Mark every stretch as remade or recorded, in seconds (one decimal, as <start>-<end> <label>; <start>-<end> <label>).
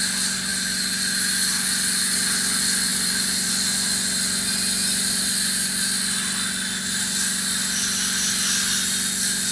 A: 0.0-2.9 recorded; 2.9-3.5 remade; 3.5-9.5 recorded